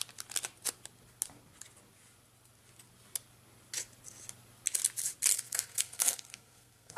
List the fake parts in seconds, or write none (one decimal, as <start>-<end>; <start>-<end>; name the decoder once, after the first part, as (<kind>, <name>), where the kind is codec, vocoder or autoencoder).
5.3-7.0 (codec, SNAC)